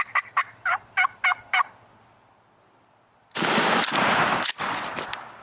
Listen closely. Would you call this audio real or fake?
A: real